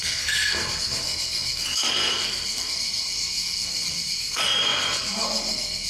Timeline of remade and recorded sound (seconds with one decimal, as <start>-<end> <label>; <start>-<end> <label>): 0.0-5.9 remade